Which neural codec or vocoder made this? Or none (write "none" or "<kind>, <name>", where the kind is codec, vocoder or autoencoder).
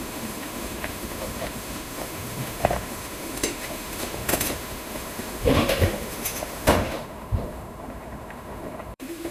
autoencoder, DAC-VAE